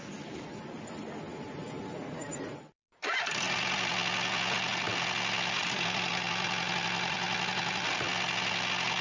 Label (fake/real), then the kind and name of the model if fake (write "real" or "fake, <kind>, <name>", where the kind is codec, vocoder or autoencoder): real